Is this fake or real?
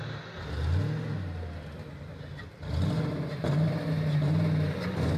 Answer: real